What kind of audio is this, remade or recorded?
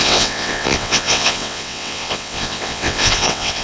remade